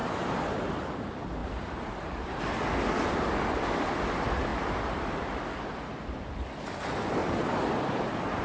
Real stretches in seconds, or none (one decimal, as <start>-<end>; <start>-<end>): 0.7-1.4; 2.4-7.2